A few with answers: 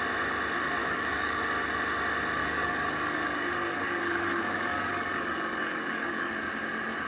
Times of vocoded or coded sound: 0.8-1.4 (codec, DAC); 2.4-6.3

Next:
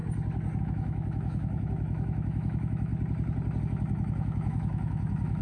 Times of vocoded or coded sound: 0.6-2.9 (autoencoder, DAC-VAE); 3.6-5.4

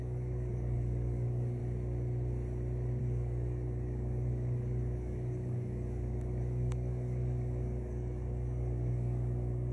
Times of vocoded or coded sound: 0.0-1.6 (codec, DAC); 3.0-9.7

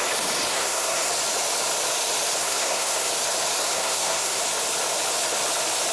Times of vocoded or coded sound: 0.5-1.1 (codec, SNAC); 2.4-3.1; 3.6-4.4

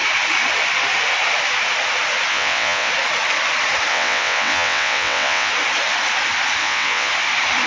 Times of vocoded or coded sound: 2.3-2.9 (vocoder, WaveNeXt); 3.9-5.5; 6.6-7.1

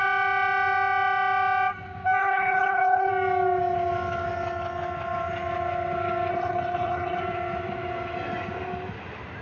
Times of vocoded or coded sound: 2.2-3.1 (codec, HILCodec); 6.3-7.2